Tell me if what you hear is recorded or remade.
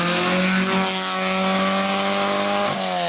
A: recorded